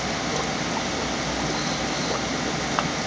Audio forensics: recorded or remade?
recorded